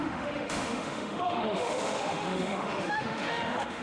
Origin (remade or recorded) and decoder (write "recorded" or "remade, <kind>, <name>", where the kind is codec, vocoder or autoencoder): remade, autoencoder, DAC-VAE